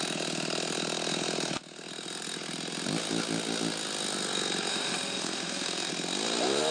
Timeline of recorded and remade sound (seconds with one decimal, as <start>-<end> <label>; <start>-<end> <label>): 0.0-4.7 recorded; 4.7-5.9 remade; 5.9-6.7 recorded